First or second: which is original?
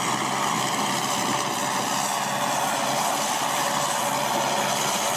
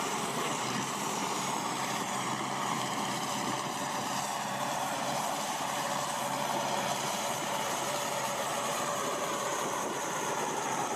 first